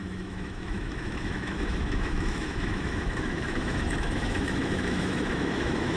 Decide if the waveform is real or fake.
fake